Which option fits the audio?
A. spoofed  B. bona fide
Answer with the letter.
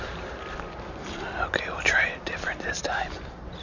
B